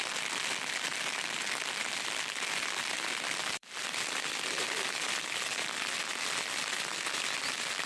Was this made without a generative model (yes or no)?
yes